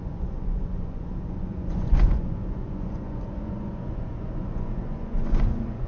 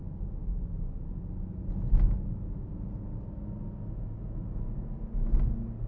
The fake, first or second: first